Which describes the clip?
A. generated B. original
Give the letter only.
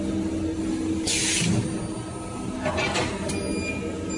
B